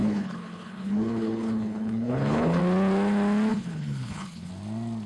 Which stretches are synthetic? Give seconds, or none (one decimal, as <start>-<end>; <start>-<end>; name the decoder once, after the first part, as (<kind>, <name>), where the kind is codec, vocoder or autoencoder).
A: 0.0-2.6 (codec, HILCodec); 3.5-4.5